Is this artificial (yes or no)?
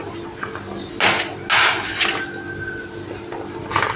no